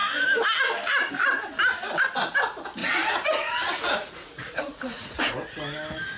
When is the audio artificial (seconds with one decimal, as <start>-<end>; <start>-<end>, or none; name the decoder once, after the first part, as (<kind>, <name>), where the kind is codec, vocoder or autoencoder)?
2.8-5.2 (vocoder, Vocos)